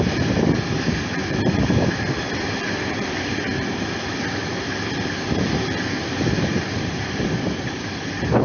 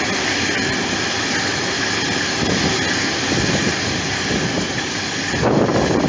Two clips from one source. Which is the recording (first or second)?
second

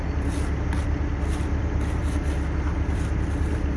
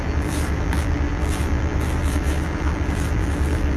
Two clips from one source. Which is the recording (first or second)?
first